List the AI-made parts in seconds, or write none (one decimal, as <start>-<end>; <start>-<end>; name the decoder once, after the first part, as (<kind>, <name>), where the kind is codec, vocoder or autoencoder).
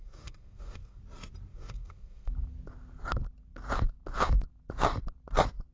0.0-1.0 (codec, SNAC); 1.5-2.3